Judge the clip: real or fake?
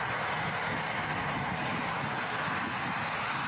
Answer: real